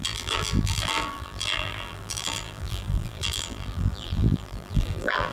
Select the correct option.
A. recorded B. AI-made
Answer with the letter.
B